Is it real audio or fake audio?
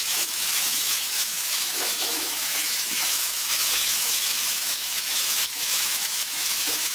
fake